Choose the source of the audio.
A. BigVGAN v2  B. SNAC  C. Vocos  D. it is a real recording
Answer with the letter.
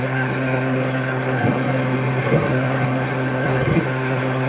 B